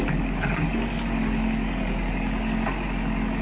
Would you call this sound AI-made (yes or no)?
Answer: yes